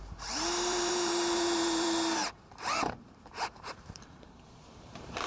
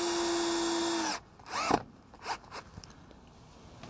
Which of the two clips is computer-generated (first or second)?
first